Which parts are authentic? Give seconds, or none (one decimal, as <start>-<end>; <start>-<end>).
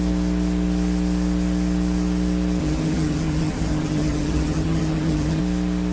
0.0-2.6; 5.4-5.9